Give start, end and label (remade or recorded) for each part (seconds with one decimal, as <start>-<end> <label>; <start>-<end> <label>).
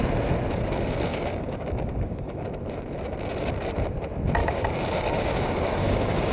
0.0-1.1 recorded; 1.1-2.5 remade; 2.5-4.4 recorded; 4.4-6.3 remade